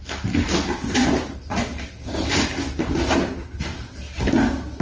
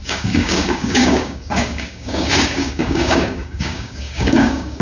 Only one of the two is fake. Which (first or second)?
second